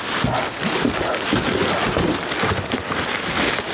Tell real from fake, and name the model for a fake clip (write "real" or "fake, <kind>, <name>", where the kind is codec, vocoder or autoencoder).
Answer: real